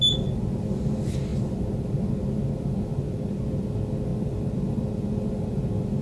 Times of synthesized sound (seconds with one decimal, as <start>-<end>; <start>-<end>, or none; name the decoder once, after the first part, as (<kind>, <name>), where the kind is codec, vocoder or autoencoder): 1.3-2.1 (vocoder, BigVGAN v2); 2.9-3.4; 4.1-5.1